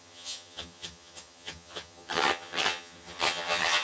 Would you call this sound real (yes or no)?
no